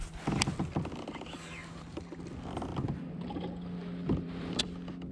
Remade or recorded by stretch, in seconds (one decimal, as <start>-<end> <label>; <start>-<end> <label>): 0.0-1.6 recorded; 1.6-2.2 remade; 2.2-4.0 recorded; 4.0-4.6 remade; 4.6-5.1 recorded